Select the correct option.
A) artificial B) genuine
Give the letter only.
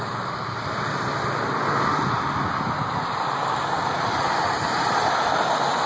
B